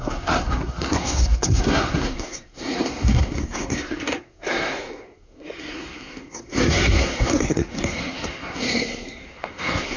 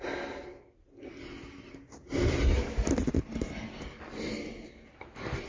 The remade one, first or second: first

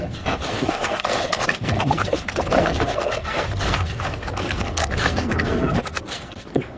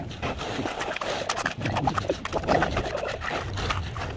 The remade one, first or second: first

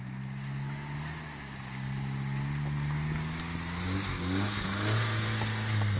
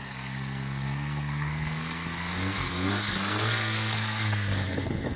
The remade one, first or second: second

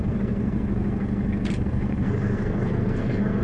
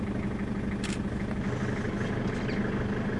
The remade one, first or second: first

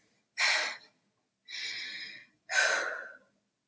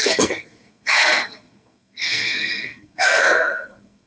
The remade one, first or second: second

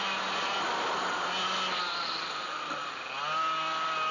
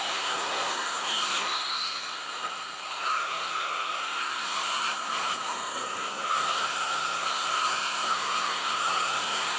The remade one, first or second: second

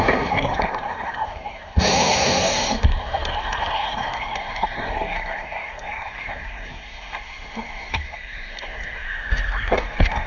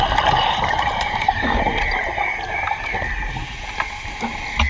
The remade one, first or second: first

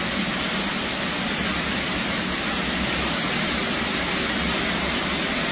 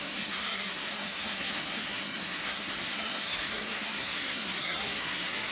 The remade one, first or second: second